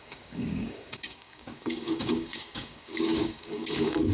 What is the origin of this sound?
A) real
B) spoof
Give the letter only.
B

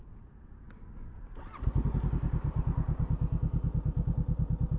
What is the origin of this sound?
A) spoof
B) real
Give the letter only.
B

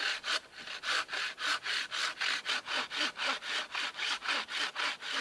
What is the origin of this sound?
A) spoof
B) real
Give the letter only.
A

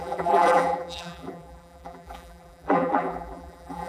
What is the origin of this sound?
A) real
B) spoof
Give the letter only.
B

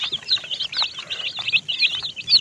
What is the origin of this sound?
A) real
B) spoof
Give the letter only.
A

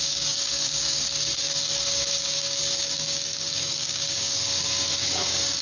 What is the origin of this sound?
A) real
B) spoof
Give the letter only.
B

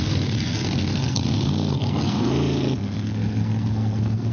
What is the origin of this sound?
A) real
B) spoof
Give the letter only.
B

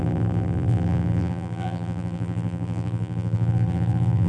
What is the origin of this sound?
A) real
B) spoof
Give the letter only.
B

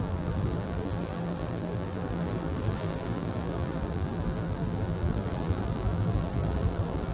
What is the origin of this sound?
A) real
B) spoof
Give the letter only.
B